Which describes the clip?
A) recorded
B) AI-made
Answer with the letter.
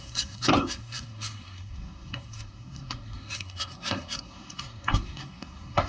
B